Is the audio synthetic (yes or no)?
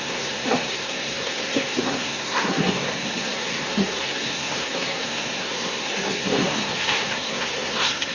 yes